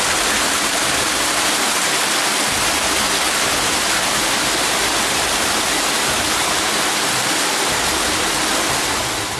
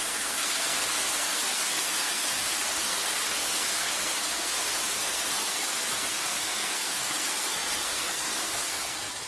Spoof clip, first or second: second